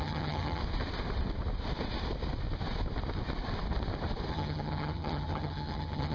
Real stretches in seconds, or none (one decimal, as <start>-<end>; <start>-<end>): 0.6-4.3